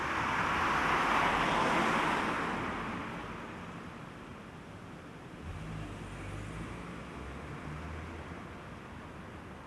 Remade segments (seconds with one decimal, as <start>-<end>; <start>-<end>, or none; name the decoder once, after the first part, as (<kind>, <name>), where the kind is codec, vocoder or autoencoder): 4.3-5.5 (vocoder, BigVGAN v2)

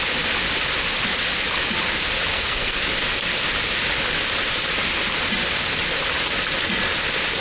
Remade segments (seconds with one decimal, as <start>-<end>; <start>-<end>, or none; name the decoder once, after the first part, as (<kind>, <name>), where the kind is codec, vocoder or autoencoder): 2.3-2.8 (codec, SNAC)

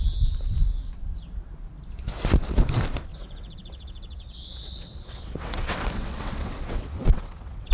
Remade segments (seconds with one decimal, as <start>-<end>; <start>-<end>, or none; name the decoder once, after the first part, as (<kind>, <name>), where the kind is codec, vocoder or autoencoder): 3.1-7.7 (vocoder, WaveNeXt)

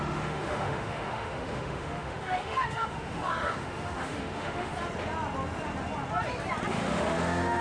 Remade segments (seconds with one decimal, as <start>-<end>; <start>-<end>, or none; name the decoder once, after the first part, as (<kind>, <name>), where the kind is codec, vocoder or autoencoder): 0.0-4.7 (autoencoder, DAC-VAE); 6.7-7.6

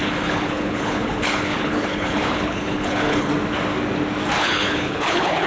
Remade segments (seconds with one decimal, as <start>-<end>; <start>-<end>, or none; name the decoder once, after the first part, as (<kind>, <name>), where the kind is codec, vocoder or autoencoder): 0.0-3.3 (codec, HILCodec); 4.4-5.5